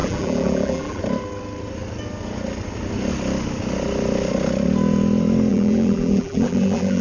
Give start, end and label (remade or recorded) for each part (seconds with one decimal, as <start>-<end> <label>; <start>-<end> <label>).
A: 0.0-1.0 remade; 1.0-5.5 recorded; 5.5-7.0 remade